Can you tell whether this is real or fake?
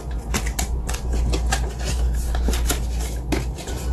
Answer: real